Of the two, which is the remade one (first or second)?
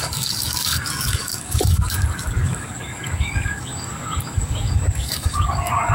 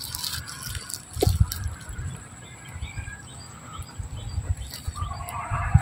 first